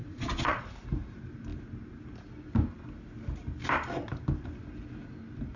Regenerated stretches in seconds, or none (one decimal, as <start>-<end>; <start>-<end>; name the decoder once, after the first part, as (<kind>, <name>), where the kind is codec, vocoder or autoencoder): 0.0-0.6 (vocoder, Vocos)